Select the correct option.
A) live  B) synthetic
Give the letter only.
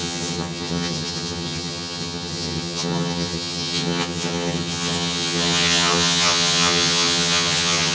B